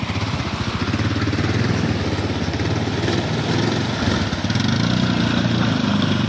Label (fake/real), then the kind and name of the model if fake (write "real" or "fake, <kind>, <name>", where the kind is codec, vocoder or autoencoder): real